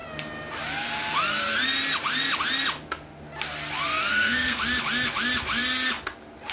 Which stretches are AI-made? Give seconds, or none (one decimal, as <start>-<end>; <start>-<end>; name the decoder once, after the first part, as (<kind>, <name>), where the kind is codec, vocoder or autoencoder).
4.1-4.6 (codec, SNAC)